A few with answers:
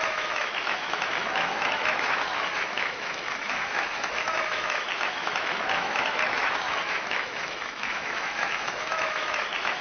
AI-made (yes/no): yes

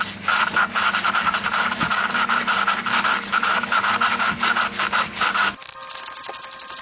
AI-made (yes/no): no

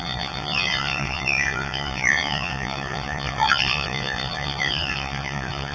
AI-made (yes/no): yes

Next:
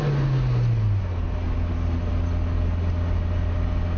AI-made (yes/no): no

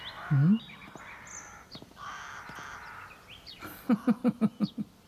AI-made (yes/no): no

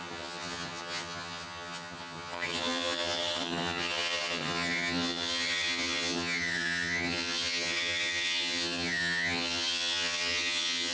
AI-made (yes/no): yes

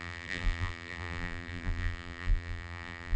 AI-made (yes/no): yes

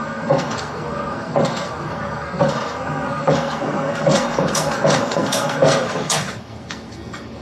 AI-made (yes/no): yes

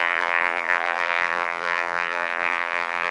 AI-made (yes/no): yes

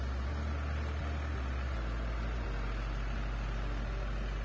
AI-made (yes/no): no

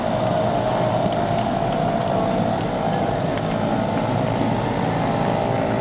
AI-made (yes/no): no